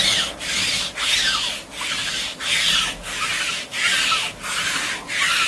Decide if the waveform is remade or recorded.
recorded